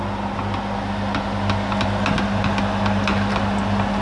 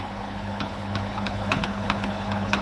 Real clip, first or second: first